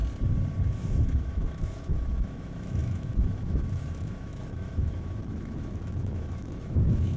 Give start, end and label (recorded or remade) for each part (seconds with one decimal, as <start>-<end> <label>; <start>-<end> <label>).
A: 0.0-0.7 recorded; 0.7-7.2 remade